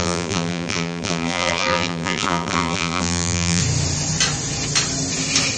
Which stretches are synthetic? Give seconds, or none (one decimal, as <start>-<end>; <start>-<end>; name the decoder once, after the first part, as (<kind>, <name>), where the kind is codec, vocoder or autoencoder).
0.0-3.6 (vocoder, BigVGAN v2)